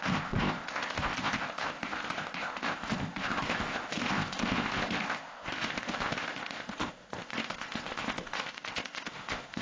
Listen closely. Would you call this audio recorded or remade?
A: remade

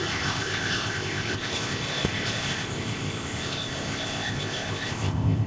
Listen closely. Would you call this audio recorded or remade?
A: remade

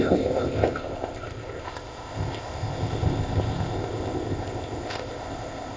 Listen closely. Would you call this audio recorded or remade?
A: remade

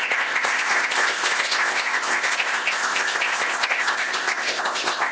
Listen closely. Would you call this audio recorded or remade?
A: remade